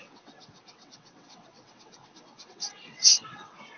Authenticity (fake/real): fake